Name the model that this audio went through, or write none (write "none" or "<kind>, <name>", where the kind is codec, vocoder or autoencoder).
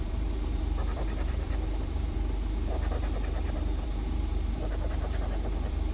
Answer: vocoder, BigVGAN v2